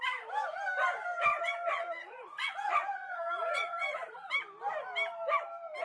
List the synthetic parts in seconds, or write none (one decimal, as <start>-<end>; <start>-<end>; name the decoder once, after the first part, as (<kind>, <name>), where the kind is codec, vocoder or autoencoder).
1.3-4.3 (vocoder, Vocos)